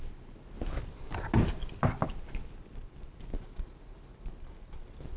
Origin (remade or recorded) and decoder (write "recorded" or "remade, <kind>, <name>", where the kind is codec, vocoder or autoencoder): recorded